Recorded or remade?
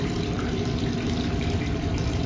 remade